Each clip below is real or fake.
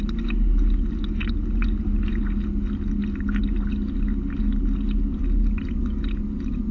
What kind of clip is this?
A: real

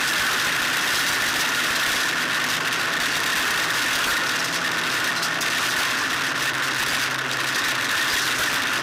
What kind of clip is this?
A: real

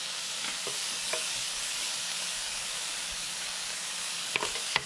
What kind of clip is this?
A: fake